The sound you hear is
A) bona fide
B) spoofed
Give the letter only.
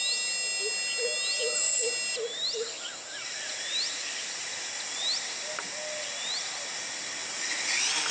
A